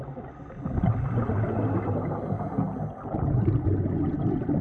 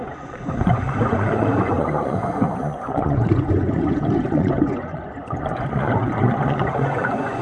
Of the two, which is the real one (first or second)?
first